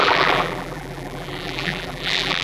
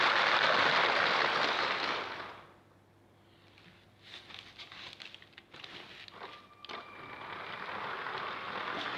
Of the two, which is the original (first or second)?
second